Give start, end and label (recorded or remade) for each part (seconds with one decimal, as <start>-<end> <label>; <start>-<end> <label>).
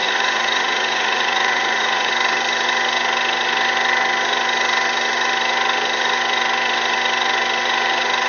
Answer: 0.0-2.1 remade; 2.1-8.3 recorded